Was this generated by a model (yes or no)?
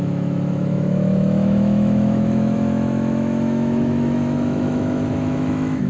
yes